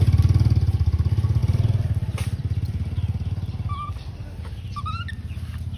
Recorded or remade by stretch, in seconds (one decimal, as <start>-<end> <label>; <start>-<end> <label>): 0.0-1.4 recorded; 1.4-4.9 remade; 4.9-5.8 recorded